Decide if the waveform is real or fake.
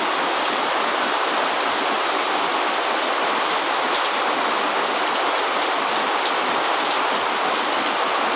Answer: real